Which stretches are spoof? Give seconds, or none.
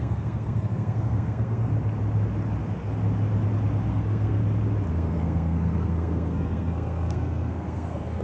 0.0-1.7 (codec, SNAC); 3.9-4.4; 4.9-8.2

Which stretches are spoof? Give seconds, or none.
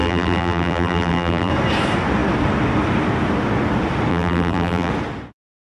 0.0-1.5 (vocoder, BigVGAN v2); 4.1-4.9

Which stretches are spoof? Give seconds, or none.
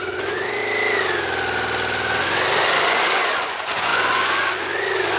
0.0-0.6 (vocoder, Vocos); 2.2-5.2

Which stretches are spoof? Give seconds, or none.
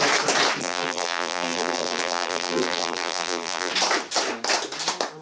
0.6-3.7 (vocoder, BigVGAN v2)